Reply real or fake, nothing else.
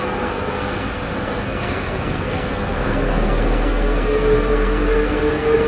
fake